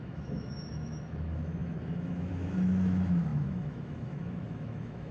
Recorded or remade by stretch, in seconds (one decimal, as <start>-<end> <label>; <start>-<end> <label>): 0.0-5.1 remade